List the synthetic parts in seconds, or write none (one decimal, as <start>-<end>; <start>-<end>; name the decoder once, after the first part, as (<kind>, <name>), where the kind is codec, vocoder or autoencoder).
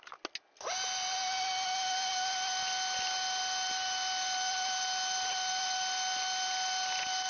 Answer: none